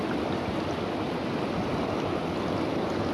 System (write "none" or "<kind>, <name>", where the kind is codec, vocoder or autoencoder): none